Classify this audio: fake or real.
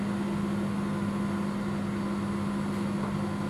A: real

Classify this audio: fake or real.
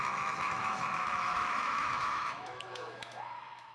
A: fake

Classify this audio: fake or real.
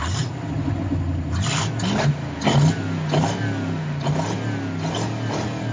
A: real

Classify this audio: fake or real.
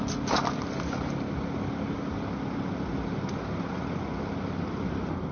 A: real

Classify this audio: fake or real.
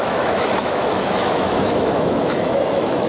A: fake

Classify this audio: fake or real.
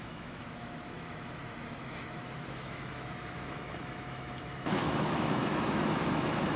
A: fake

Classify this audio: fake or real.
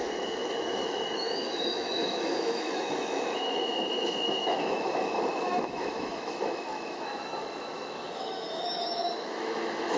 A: fake